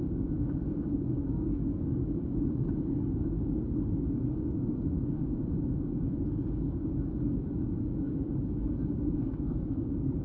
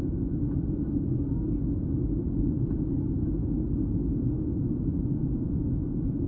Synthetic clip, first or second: first